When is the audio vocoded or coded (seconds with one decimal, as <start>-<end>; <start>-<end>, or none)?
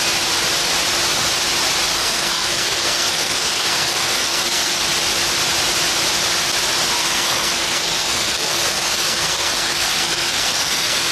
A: 1.9-4.8; 7.0-11.1